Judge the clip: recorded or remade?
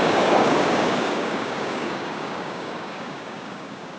remade